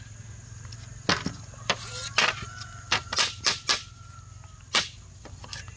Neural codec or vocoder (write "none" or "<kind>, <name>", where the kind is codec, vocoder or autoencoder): none